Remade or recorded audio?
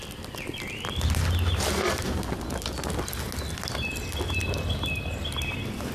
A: recorded